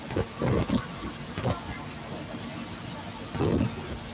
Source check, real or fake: real